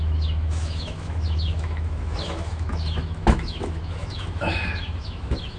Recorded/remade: remade